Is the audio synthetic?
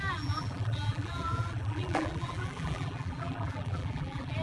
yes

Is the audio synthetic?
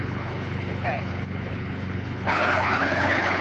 yes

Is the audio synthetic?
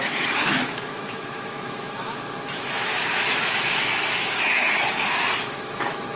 yes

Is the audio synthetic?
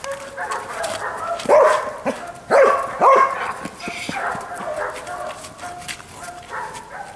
no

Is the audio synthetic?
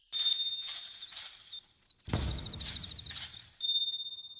no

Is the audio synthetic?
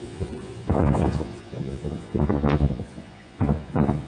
yes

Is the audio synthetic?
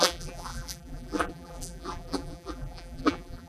yes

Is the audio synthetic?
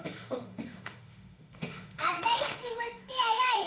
yes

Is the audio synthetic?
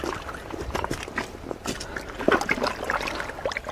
no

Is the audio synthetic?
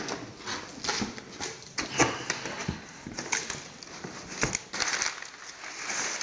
no